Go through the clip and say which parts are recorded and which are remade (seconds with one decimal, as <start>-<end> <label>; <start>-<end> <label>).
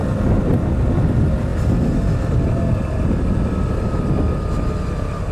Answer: 0.0-5.3 recorded